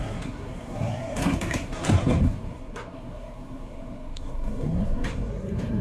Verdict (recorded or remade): remade